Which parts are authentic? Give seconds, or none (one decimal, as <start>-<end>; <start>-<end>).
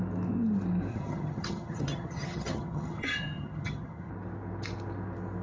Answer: 0.0-0.9; 4.1-5.4